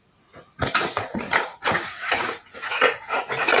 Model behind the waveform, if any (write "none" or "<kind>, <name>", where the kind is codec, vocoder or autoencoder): vocoder, Vocos